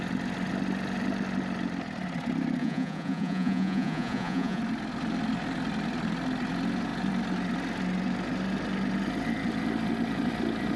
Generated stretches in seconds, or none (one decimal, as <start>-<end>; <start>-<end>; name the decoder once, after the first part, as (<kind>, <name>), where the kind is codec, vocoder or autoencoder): 2.6-4.6 (vocoder, Vocos)